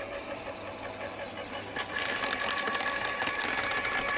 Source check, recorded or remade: recorded